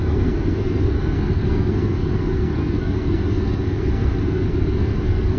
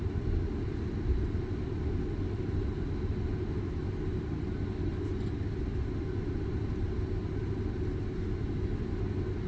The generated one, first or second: first